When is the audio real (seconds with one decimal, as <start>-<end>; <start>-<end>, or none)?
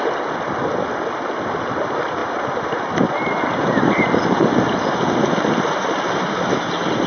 0.0-2.2; 6.5-7.1